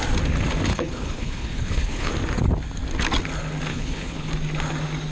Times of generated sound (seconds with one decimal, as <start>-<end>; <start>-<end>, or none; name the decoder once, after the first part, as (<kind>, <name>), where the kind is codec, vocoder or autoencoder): 0.7-2.1 (codec, HILCodec); 3.7-4.3